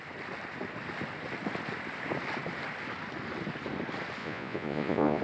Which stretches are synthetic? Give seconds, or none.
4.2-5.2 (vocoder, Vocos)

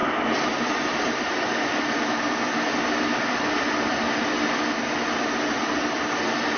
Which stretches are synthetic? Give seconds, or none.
none

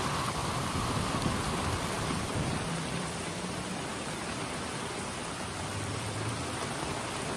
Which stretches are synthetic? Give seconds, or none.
0.4-3.1 (vocoder, BigVGAN v2); 5.2-6.3

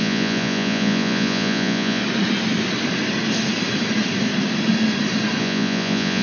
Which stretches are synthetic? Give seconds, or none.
0.0-2.0 (vocoder, Vocos); 5.4-6.2

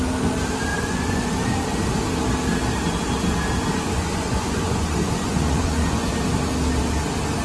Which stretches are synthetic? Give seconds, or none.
0.7-1.3 (vocoder, Vocos); 3.7-6.1